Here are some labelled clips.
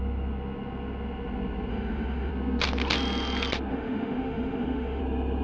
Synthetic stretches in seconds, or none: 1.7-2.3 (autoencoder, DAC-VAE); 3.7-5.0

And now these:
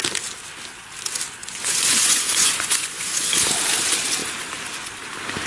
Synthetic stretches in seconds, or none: 1.4-3.3 (vocoder, Vocos)

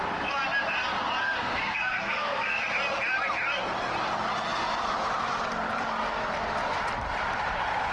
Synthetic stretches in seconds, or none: 1.2-2.7 (codec, SNAC)